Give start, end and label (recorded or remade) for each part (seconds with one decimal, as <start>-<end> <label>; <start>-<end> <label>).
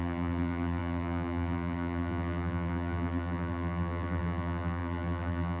0.0-5.6 remade